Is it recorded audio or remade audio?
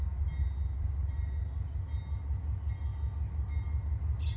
recorded